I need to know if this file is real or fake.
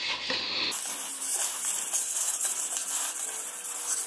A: real